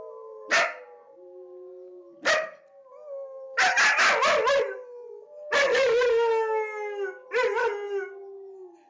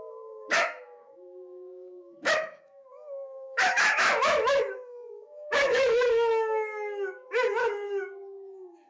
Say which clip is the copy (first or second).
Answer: second